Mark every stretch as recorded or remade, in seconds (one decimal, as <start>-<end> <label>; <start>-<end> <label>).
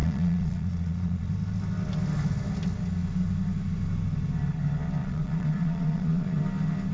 0.0-1.3 remade; 1.3-5.0 recorded; 5.0-6.4 remade; 6.4-6.9 recorded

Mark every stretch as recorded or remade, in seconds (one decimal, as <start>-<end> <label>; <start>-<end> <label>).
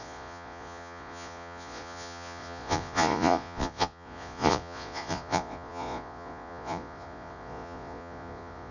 0.0-8.7 remade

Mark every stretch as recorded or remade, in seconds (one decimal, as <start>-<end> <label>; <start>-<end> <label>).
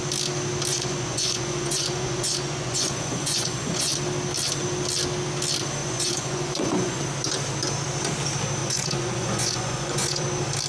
0.0-0.7 recorded; 0.7-3.9 remade; 3.9-5.8 recorded; 5.8-7.0 remade; 7.0-8.6 recorded; 8.6-10.2 remade; 10.2-10.7 recorded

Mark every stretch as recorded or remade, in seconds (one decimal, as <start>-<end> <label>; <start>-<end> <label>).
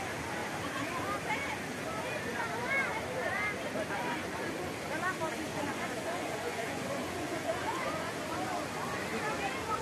0.0-5.5 recorded; 5.5-8.1 remade; 8.1-9.8 recorded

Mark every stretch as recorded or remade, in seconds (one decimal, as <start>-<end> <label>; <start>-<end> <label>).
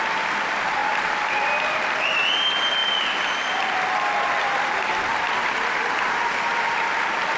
0.0-7.4 recorded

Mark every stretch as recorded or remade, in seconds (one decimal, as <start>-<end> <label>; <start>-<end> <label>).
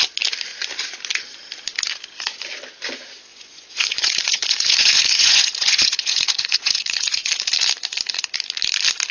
0.0-3.3 recorded; 3.3-7.3 remade; 7.3-9.1 recorded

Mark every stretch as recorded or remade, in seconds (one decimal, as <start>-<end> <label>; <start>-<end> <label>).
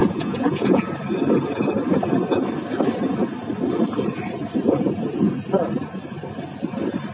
0.0-0.9 remade; 0.9-7.1 recorded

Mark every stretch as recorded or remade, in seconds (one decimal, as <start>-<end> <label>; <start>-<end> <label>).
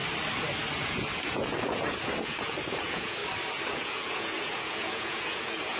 0.0-0.8 recorded; 0.8-3.2 remade; 3.2-3.7 recorded; 3.7-5.8 remade